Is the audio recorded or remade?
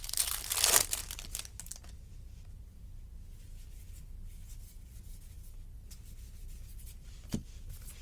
recorded